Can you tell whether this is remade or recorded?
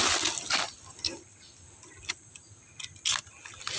recorded